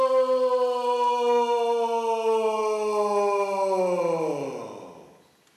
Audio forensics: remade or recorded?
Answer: recorded